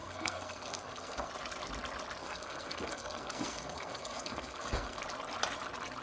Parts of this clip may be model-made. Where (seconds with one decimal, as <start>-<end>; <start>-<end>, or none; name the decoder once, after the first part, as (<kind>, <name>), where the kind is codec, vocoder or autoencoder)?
0.0-1.3 (codec, SNAC); 2.2-5.0